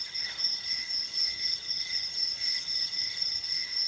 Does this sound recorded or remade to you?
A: remade